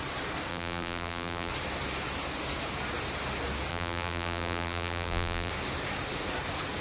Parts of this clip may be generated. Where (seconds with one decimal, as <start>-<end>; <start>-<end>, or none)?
0.5-1.5; 3.7-5.5